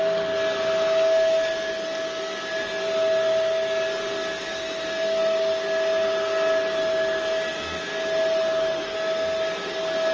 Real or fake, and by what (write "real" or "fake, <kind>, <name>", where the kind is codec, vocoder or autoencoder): real